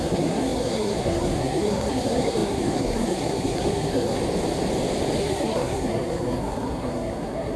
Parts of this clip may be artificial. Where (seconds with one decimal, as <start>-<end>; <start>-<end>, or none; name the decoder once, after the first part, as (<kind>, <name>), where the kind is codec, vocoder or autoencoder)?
0.0-4.2 (codec, SNAC); 5.2-7.6